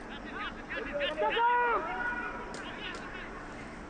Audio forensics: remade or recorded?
recorded